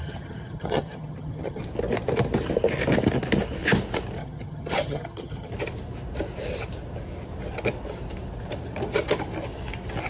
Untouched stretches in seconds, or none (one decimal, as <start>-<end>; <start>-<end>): 1.6-4.2; 5.5-10.1